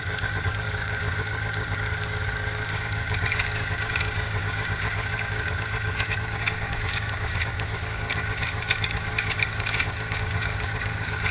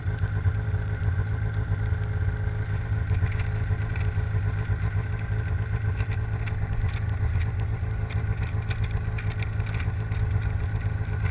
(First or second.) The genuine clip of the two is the second